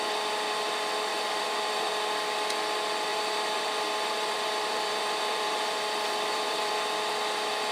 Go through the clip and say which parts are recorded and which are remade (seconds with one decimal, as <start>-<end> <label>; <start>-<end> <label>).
0.0-1.1 recorded; 1.1-1.9 remade; 1.9-3.1 recorded; 3.1-6.7 remade; 6.7-7.7 recorded